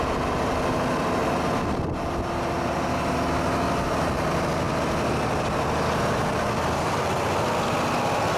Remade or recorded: recorded